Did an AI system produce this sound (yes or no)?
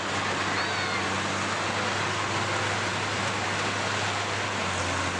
no